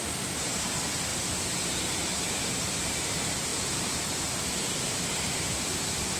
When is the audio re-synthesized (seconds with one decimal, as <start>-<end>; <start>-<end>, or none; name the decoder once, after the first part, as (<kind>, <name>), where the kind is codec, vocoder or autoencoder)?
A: none